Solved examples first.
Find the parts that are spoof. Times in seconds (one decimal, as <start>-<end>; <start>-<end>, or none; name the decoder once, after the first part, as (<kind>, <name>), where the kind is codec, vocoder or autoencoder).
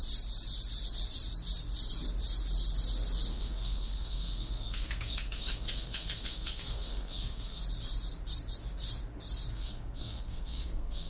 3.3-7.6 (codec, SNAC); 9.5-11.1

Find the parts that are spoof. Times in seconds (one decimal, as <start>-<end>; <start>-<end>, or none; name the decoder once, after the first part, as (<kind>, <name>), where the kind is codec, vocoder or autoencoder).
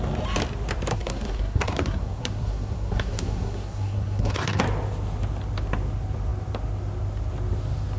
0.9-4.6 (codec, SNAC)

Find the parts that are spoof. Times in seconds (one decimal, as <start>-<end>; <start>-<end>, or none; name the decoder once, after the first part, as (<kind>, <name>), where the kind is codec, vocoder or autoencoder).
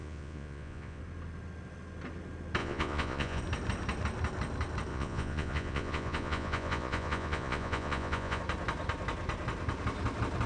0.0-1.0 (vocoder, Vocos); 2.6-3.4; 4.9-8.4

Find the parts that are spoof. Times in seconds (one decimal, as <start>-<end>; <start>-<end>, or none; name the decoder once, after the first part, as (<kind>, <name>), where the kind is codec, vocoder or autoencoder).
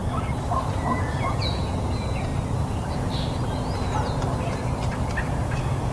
0.8-2.3 (vocoder, Vocos); 5.5-5.9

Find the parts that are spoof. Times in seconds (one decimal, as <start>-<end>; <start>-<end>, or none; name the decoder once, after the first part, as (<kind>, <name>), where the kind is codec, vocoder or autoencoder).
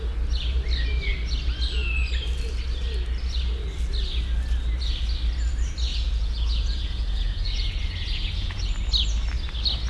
5.9-8.7 (vocoder, Vocos)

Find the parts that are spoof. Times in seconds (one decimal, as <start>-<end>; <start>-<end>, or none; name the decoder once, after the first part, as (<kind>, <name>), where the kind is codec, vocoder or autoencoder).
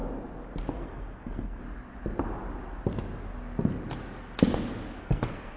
0.7-1.6 (codec, SNAC); 5.0-5.6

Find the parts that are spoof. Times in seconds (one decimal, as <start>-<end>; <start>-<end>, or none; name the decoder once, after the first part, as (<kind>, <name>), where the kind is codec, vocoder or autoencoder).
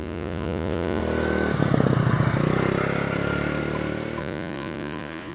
0.0-1.0 (vocoder, Vocos); 4.2-5.3